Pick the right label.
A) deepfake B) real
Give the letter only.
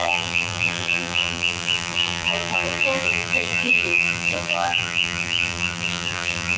A